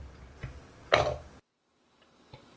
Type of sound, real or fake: real